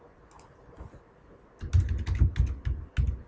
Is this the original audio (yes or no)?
yes